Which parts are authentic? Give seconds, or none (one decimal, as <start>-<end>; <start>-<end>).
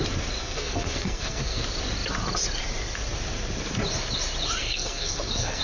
0.0-0.4; 1.6-4.6